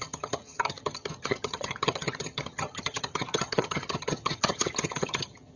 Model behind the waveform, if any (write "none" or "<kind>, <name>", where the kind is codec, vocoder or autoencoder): vocoder, HiFi-GAN